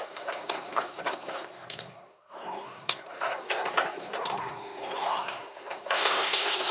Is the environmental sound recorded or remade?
remade